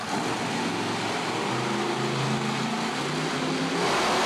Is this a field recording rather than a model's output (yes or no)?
yes